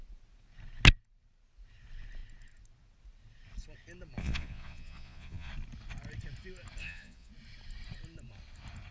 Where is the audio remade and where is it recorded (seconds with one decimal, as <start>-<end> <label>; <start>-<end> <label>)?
0.0-4.2 recorded; 4.2-5.5 remade; 5.5-6.8 recorded; 6.8-7.3 remade; 7.3-8.9 recorded